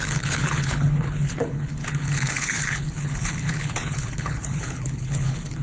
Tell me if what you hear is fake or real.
fake